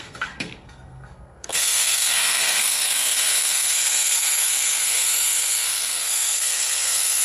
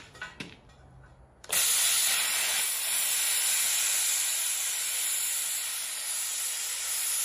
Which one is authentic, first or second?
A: second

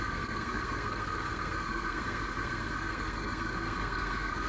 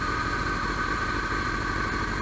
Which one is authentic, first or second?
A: second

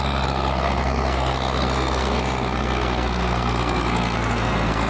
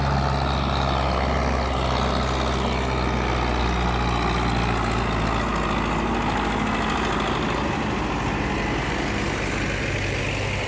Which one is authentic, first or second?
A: second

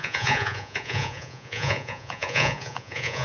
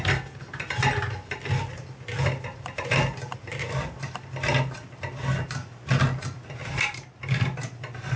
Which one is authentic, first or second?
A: second